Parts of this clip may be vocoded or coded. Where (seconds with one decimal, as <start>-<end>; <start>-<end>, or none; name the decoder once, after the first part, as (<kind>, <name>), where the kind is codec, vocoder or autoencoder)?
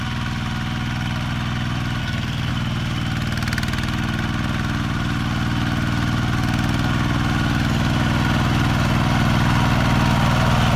2.0-2.5 (codec, SNAC)